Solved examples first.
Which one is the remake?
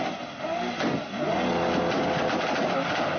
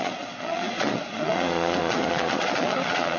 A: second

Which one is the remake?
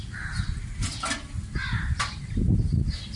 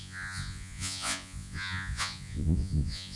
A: second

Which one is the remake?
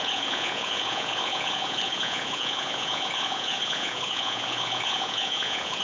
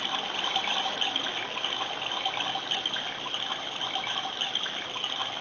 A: first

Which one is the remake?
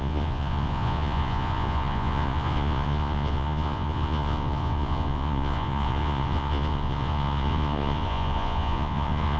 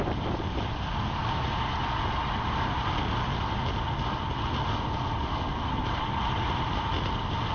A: first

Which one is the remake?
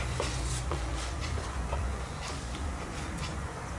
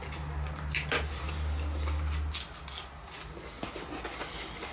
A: first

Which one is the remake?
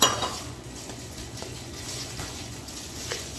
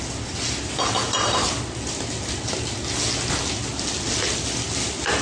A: first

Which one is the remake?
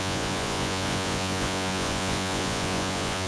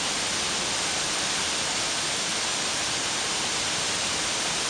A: first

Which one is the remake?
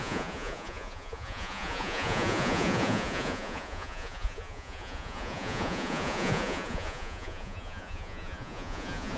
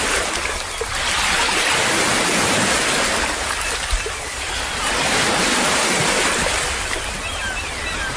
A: first